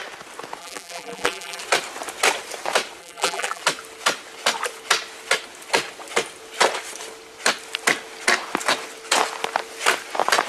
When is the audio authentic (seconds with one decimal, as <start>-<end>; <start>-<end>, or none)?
0.0-0.6; 1.6-3.0; 3.6-10.5